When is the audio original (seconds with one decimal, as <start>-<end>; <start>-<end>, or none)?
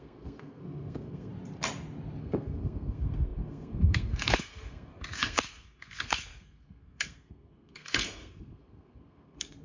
1.3-2.2